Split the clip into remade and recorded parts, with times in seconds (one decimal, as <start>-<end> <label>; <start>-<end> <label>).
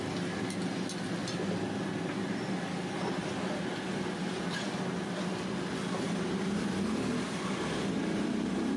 0.0-8.8 recorded